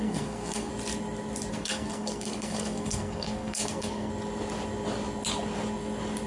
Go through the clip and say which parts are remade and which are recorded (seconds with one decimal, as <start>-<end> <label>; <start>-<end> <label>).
0.0-0.7 remade; 0.7-1.5 recorded; 1.5-4.1 remade; 4.1-6.3 recorded